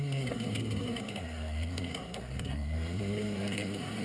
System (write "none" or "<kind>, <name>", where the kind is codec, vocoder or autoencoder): codec, SNAC